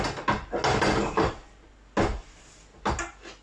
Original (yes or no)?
yes